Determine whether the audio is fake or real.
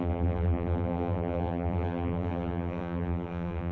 fake